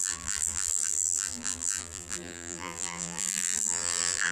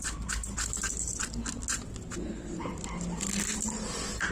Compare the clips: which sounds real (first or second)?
second